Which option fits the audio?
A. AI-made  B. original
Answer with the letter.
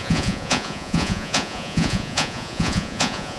A